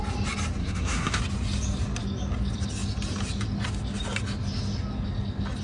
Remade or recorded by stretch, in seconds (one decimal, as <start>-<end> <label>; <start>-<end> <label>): 0.0-0.6 recorded; 0.6-1.2 remade; 1.2-5.6 recorded